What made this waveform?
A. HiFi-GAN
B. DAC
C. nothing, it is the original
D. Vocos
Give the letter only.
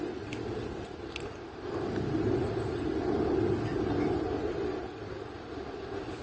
C